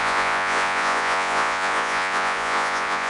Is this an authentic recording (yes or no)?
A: no